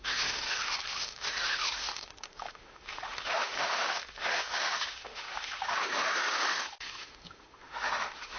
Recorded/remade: remade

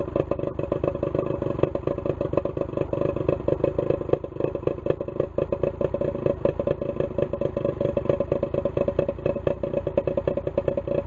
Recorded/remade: recorded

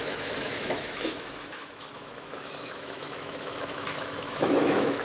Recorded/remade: remade